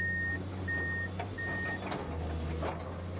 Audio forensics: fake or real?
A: real